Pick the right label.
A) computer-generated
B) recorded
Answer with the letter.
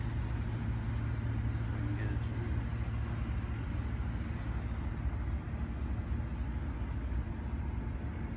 B